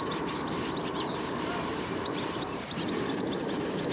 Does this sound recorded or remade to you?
remade